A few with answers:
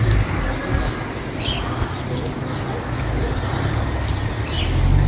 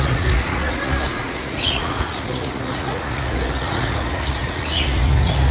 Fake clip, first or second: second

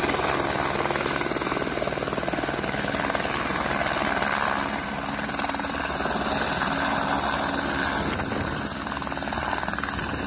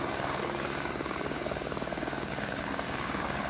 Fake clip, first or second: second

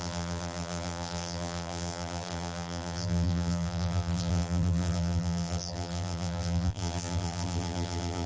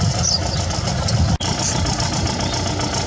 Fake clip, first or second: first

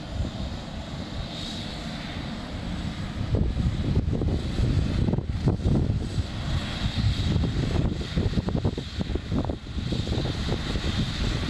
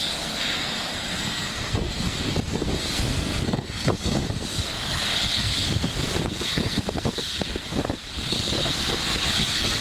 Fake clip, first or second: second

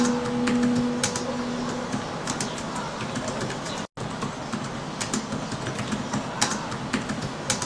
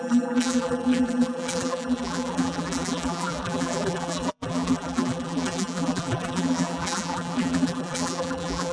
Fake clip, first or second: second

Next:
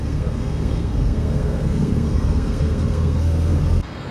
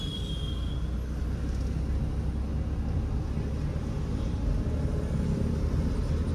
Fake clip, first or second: first